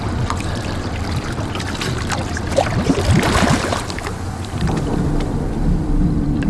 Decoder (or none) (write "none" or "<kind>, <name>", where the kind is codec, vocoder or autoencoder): vocoder, BigVGAN v2